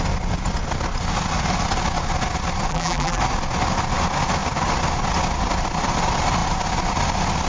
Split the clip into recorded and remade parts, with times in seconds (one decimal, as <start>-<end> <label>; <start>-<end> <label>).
0.0-2.7 recorded; 2.7-3.2 remade; 3.2-7.5 recorded